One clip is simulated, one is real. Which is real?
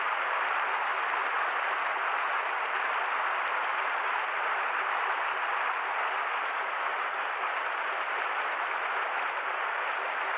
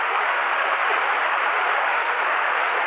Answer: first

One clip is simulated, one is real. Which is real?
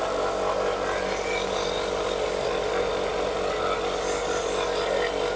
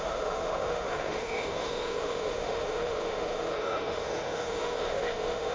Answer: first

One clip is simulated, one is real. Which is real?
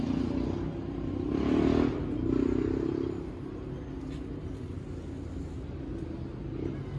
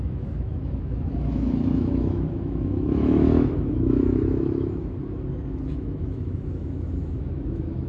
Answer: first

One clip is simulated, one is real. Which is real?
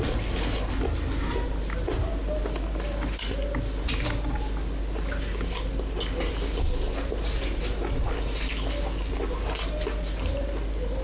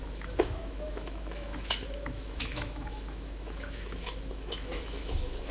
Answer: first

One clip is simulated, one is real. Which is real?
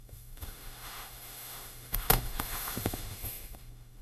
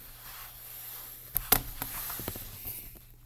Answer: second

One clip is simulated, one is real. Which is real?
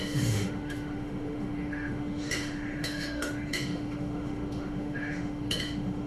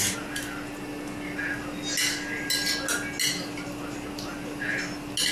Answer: second